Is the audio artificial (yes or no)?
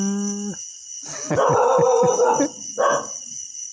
no